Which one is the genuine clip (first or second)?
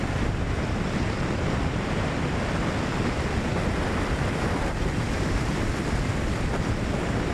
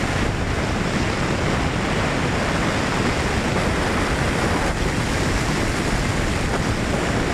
second